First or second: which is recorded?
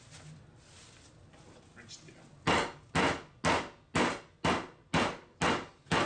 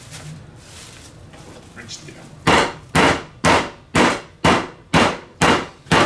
first